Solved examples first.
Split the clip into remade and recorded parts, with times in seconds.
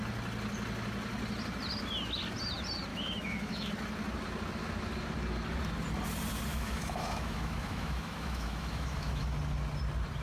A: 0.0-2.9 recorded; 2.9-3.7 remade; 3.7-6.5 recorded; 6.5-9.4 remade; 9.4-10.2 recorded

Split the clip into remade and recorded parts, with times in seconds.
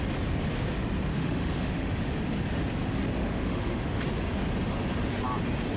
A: 0.0-1.1 recorded; 1.1-1.9 remade; 1.9-3.2 recorded; 3.2-4.0 remade; 4.0-5.8 recorded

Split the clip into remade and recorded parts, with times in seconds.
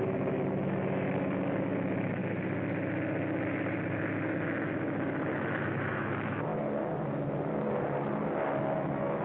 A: 0.0-2.2 remade; 2.2-4.0 recorded; 4.0-6.5 remade; 6.5-8.6 recorded; 8.6-9.2 remade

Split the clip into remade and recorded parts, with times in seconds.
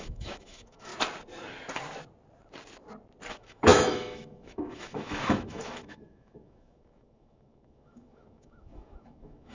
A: 0.0-0.9 remade; 0.9-3.3 recorded; 3.3-9.5 remade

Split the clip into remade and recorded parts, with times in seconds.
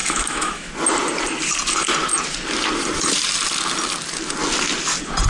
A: 0.0-0.7 remade; 0.7-5.3 recorded